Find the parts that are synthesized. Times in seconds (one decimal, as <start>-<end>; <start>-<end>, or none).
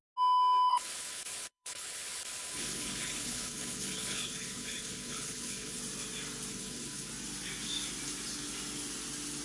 0.7-5.8; 6.5-7.1